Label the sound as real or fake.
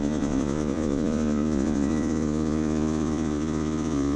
fake